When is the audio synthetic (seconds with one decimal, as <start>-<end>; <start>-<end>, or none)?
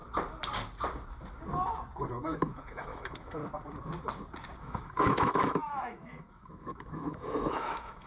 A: 2.1-3.4; 4.6-8.1